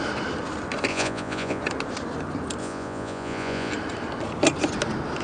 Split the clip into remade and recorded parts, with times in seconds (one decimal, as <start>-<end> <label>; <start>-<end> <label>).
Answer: 0.0-0.9 recorded; 0.9-1.6 remade; 1.6-2.6 recorded; 2.6-3.7 remade; 3.7-5.2 recorded